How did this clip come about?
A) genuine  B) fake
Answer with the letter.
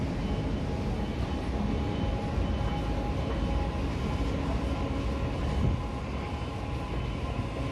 A